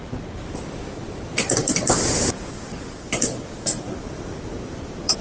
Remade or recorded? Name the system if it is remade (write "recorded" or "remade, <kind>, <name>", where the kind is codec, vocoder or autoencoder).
remade, vocoder, BigVGAN v2